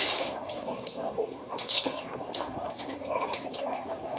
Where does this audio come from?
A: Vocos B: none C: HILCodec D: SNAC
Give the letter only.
D